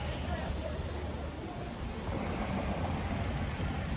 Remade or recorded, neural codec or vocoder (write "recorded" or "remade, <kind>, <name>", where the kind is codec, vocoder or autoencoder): recorded